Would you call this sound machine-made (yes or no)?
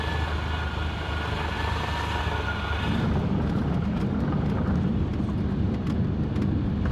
no